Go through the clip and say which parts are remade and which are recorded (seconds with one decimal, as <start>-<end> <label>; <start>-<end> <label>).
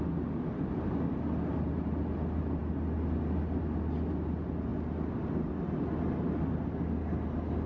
0.0-7.7 recorded